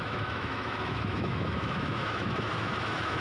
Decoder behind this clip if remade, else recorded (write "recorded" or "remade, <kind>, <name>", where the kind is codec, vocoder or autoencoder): remade, autoencoder, DAC-VAE